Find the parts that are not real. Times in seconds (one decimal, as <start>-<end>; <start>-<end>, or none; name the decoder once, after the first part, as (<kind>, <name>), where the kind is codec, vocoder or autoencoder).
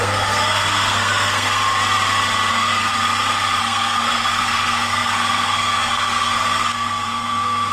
0.0-1.6 (codec, SNAC); 2.5-3.0; 3.6-7.7